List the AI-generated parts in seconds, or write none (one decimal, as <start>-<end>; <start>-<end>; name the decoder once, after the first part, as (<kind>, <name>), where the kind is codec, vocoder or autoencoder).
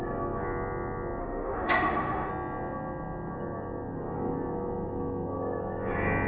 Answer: 1.2-2.3 (autoencoder, DAC-VAE)